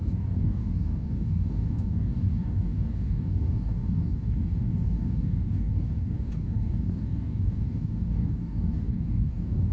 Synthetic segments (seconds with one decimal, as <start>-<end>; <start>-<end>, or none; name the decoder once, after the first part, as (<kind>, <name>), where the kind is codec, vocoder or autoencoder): 0.0-9.7 (codec, DAC)